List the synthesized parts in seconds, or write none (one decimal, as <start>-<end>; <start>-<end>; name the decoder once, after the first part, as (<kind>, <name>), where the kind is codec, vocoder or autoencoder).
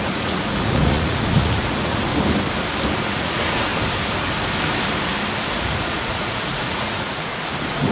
0.0-2.1 (vocoder, Vocos); 3.1-3.7; 5.5-7.9